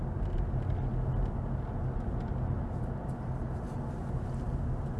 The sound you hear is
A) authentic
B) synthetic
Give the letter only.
A